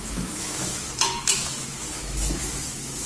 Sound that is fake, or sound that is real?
fake